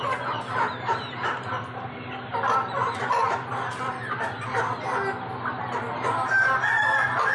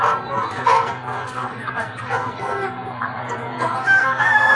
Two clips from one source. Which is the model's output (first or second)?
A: second